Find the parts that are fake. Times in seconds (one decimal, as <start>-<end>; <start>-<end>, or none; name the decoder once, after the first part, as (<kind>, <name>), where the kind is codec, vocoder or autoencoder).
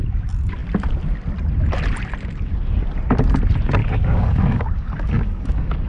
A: 3.8-5.9 (codec, DAC)